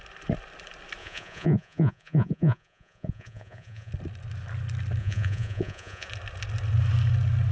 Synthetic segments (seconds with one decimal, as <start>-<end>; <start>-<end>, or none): 1.0-3.9; 5.0-6.1